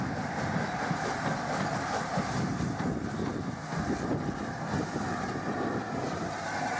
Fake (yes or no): no